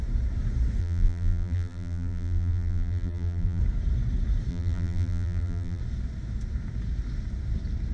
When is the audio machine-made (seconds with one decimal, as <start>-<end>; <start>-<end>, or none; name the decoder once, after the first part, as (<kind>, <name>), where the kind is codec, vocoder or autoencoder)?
0.8-3.6 (vocoder, BigVGAN v2); 4.5-5.8